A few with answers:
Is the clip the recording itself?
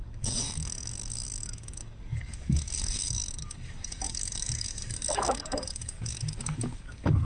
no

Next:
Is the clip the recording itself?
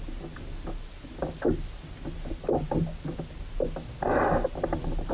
yes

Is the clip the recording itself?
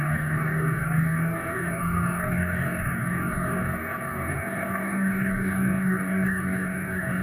no